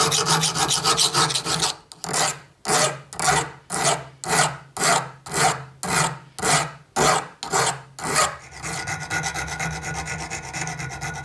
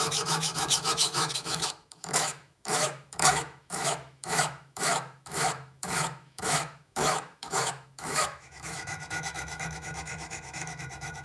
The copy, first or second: second